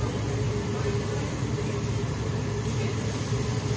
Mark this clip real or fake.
real